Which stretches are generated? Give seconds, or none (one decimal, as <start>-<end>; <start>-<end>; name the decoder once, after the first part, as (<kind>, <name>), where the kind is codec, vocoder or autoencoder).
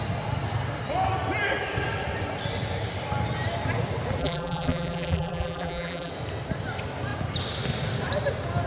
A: 4.2-6.1 (vocoder, BigVGAN v2)